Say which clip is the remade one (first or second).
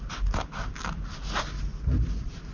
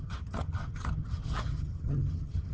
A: second